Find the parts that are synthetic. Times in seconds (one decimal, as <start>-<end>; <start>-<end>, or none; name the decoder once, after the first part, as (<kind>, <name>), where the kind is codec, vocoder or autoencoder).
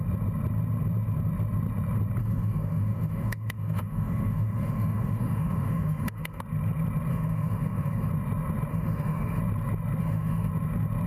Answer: 2.2-6.4 (autoencoder, DAC-VAE); 7.1-8.1; 8.7-9.4; 10.0-10.5